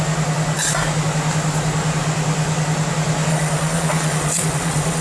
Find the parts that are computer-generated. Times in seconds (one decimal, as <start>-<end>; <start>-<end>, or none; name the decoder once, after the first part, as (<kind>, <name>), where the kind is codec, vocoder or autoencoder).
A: 3.3-5.0 (vocoder, Vocos)